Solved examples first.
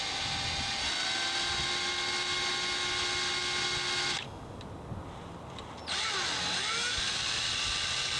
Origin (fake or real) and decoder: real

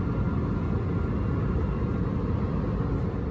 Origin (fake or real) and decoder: real